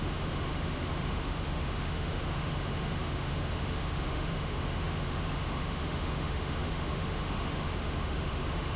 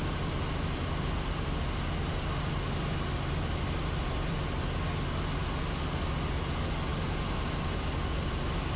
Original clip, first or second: second